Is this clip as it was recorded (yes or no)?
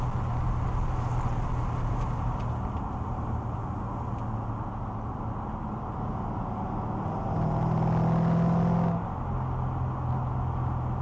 yes